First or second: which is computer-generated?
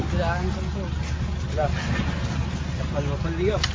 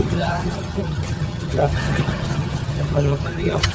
second